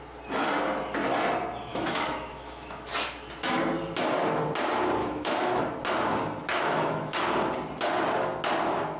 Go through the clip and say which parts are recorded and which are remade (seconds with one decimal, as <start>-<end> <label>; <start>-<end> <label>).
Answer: 0.0-1.7 recorded; 1.7-2.9 remade; 2.9-5.0 recorded; 5.0-5.6 remade; 5.6-6.5 recorded; 6.5-7.2 remade; 7.2-9.0 recorded